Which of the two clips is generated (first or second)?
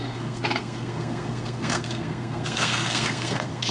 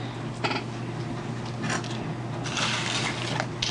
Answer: first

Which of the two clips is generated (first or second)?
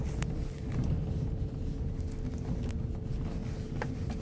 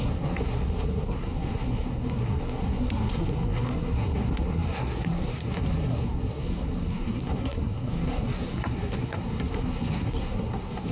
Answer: second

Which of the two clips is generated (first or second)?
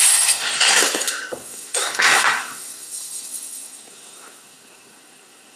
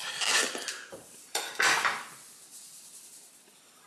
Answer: first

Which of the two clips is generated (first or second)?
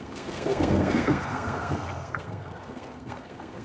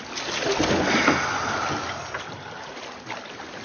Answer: first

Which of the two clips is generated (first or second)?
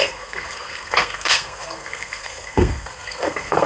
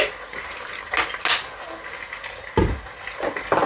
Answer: first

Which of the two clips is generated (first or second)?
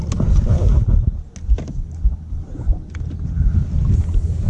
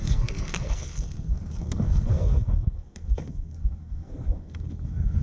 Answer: second